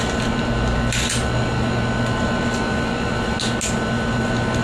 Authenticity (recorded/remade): recorded